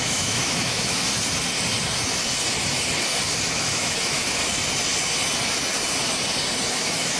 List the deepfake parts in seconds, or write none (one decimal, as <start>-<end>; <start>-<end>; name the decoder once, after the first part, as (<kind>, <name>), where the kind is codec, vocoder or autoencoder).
0.0-1.1 (autoencoder, DAC-VAE); 3.5-4.4; 6.7-7.2